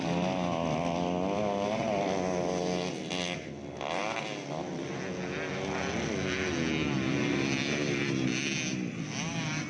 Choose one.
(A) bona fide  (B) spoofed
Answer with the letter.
A